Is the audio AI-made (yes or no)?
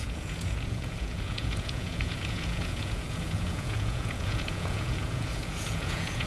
yes